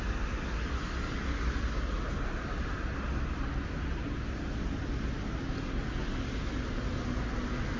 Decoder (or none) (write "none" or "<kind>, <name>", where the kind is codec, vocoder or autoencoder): none